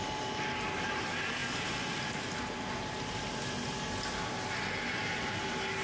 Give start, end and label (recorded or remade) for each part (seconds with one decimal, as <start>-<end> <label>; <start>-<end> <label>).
0.0-5.8 recorded